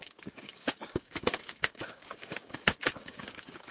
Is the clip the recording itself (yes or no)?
no